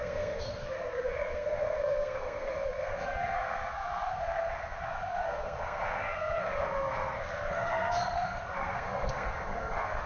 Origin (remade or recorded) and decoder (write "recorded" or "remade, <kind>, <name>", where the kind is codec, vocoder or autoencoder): remade, codec, SNAC